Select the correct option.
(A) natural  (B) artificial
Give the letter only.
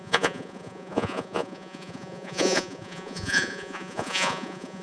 B